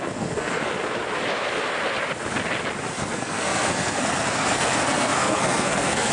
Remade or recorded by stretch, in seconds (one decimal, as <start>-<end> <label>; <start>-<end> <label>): 0.0-0.7 remade; 0.7-2.9 recorded; 2.9-6.1 remade